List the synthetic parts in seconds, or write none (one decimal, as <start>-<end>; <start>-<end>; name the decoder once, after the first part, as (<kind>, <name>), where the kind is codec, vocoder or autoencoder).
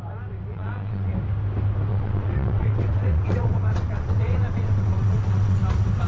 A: 0.5-1.1 (vocoder, WaveNeXt); 1.9-5.6